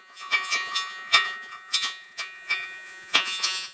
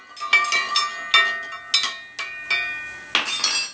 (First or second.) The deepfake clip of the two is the first